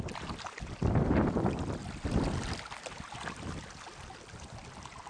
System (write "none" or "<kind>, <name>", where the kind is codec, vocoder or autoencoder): none